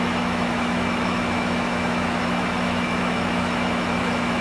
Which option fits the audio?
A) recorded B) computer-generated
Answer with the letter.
B